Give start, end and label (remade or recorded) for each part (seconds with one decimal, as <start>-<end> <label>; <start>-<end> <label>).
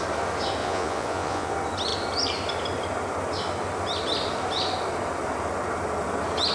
0.0-0.6 recorded; 0.6-1.5 remade; 1.5-6.5 recorded